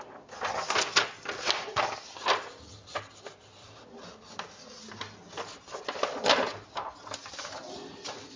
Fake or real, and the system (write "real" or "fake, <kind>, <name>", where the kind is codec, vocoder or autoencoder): real